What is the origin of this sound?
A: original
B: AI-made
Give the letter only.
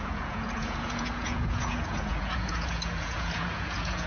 B